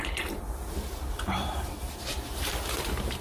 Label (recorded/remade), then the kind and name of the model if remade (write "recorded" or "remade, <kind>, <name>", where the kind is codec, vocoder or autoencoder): remade, vocoder, BigVGAN v2